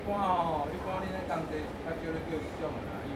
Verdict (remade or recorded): remade